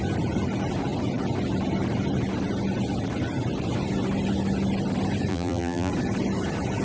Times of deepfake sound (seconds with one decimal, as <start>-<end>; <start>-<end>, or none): 5.3-5.9